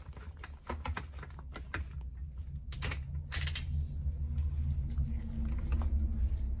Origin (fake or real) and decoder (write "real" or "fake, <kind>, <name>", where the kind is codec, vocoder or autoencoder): real